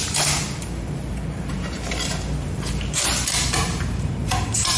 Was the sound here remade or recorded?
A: remade